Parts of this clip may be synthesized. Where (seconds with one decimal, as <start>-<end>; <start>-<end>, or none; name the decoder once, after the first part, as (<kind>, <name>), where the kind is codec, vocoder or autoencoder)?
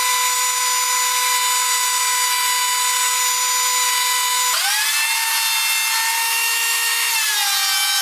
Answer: 6.2-7.1 (autoencoder, DAC-VAE)